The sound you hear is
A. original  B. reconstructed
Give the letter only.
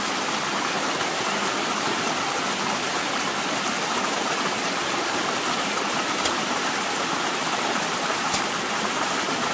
A